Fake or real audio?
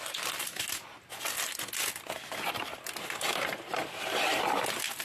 real